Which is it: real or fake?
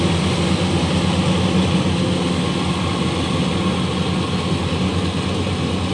real